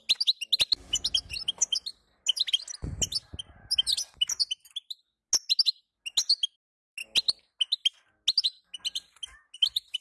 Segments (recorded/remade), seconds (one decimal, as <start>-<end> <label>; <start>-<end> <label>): 0.0-10.0 recorded